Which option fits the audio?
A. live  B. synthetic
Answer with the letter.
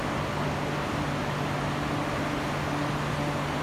A